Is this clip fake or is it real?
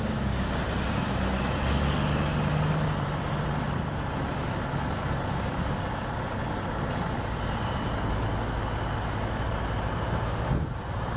real